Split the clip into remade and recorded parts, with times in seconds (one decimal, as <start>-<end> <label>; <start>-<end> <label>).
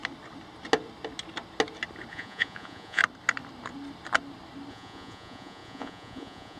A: 0.0-2.1 recorded; 2.1-3.0 remade; 3.0-4.7 recorded; 4.7-6.6 remade